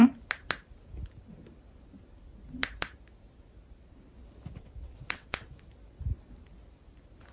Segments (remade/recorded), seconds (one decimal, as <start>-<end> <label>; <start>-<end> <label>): 0.0-4.6 recorded; 4.6-5.5 remade; 5.5-7.3 recorded